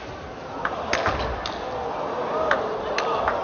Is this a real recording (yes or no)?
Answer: yes